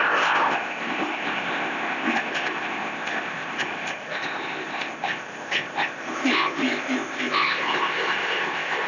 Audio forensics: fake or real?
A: fake